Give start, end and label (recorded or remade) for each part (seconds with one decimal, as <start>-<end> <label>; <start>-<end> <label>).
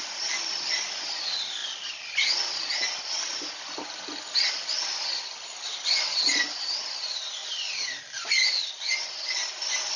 0.0-10.0 recorded